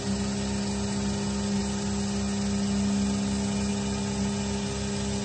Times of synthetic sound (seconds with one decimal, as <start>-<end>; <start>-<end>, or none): none